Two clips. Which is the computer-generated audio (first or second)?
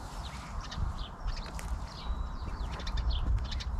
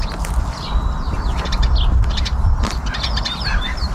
first